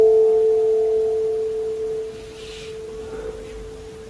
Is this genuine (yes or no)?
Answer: yes